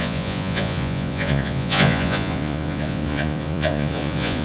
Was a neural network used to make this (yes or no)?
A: yes